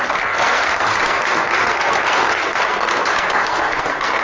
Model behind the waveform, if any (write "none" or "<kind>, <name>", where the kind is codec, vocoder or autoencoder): codec, SNAC